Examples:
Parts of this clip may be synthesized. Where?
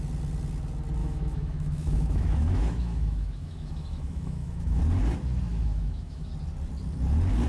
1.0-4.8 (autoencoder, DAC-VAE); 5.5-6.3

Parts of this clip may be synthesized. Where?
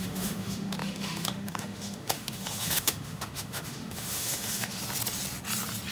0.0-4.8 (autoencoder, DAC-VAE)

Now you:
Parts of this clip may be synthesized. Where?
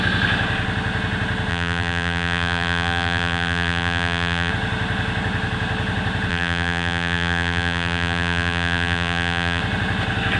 1.5-4.5 (vocoder, BigVGAN v2); 6.3-9.6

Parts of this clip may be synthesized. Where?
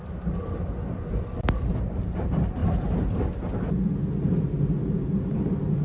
none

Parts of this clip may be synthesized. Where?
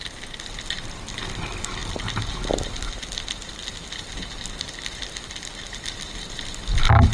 none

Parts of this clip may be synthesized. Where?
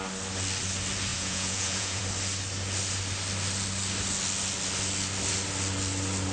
1.1-2.0 (vocoder, Vocos)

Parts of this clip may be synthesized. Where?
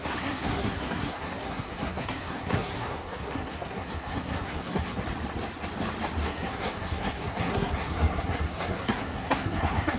0.0-5.0 (codec, SNAC); 6.2-10.0